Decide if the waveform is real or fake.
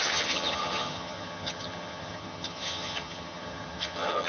fake